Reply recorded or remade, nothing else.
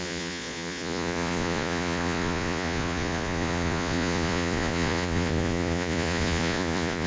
remade